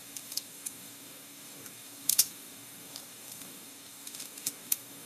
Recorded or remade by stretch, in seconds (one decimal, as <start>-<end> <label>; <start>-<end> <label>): 0.0-5.1 remade